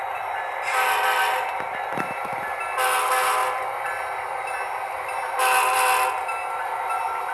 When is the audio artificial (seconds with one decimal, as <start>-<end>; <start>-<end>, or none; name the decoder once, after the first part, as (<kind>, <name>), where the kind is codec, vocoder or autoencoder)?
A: none